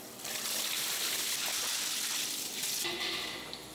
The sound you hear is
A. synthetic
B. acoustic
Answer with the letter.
B